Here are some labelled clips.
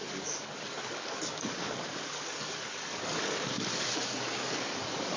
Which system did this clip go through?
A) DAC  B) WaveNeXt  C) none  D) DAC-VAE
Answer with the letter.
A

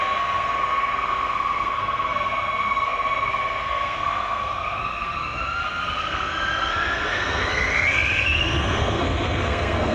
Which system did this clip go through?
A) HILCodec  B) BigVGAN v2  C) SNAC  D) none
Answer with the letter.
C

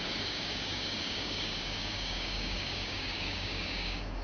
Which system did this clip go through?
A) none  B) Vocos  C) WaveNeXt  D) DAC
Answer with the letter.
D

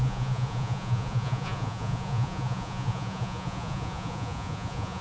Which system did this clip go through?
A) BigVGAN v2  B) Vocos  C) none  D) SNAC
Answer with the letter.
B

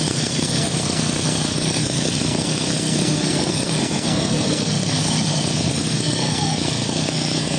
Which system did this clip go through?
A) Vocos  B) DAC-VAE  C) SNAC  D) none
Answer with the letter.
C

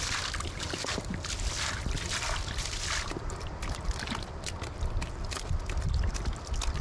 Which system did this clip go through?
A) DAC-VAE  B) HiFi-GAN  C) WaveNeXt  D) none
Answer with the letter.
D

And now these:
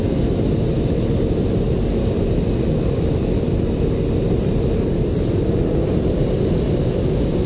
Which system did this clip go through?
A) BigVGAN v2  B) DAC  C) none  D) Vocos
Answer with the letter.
C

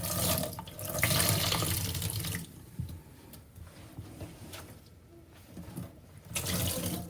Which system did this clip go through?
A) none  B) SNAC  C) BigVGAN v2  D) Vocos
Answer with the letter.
A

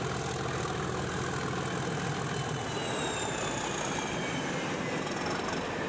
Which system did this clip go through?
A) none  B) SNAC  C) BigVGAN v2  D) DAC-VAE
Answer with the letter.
A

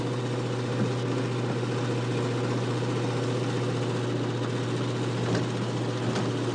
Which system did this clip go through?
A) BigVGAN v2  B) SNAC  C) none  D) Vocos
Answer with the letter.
C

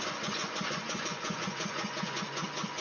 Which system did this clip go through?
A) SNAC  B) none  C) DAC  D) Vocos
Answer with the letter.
D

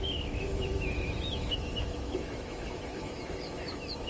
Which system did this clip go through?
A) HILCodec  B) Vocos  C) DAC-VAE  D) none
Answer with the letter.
C